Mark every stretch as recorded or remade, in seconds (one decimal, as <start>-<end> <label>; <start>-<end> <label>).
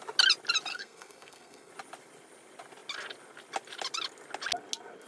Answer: 0.0-0.7 recorded; 0.7-1.7 remade; 1.7-5.1 recorded